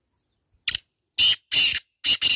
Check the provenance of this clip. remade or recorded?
recorded